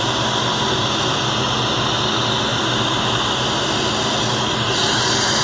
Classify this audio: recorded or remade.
recorded